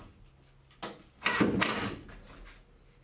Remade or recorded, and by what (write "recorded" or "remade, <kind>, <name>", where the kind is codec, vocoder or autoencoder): recorded